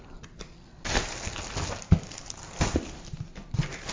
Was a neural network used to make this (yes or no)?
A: no